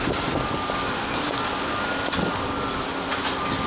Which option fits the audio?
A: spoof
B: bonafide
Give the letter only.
B